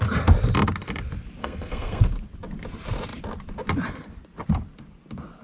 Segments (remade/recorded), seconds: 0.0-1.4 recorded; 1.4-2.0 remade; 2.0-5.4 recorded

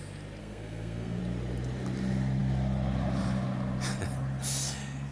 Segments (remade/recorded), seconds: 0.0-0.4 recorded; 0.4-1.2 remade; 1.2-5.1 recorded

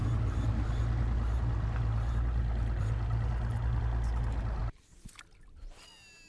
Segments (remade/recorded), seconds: 0.0-6.3 recorded